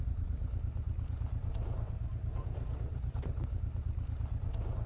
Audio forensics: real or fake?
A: real